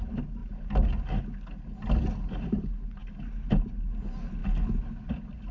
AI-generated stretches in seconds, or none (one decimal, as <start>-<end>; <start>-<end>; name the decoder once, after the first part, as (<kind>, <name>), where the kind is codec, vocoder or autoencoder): none